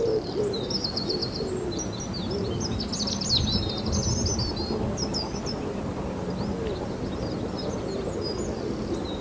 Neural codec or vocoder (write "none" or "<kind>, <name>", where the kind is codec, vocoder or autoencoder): none